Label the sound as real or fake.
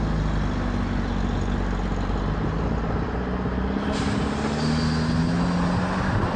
real